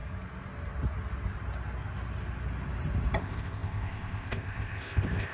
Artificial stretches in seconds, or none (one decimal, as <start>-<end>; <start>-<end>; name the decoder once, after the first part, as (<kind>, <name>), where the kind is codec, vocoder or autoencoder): 3.2-5.3 (codec, ZipCodec)